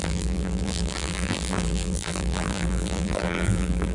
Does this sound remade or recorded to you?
remade